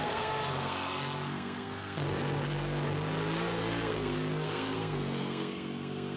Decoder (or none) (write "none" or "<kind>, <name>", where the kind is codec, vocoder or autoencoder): codec, SNAC